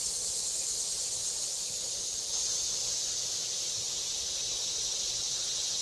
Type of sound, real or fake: real